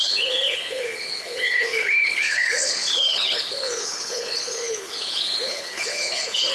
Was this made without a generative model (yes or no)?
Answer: no